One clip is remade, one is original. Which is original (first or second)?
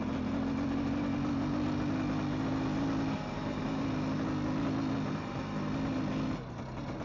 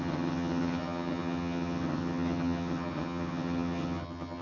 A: first